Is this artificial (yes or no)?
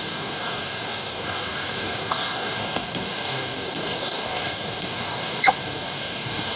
yes